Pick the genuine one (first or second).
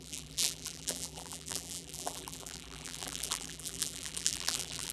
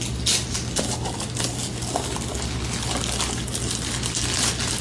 second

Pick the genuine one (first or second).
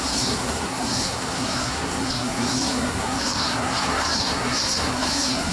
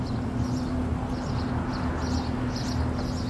second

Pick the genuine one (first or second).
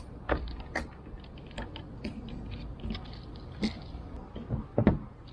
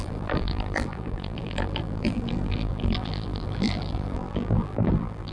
first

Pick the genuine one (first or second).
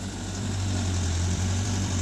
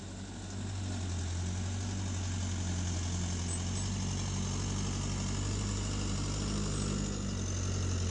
second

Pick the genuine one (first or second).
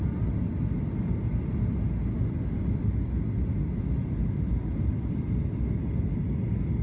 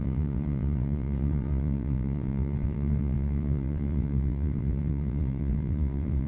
first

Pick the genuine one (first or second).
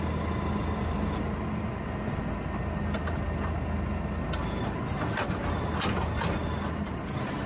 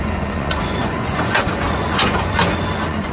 first